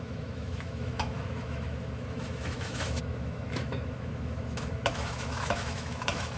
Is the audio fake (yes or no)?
yes